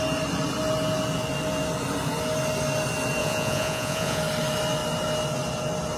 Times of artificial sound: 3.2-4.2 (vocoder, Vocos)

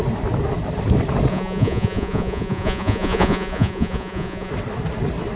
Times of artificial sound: 1.3-4.5 (vocoder, Vocos)

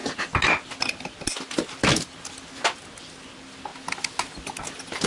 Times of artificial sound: none